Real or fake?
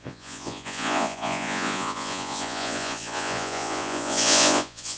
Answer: fake